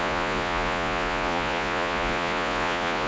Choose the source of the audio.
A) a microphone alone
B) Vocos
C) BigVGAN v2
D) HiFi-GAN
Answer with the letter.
B